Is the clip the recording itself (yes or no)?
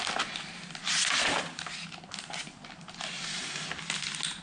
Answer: yes